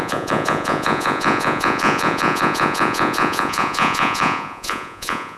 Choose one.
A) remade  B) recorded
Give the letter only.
A